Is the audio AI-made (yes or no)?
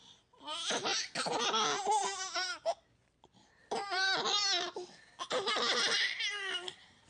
yes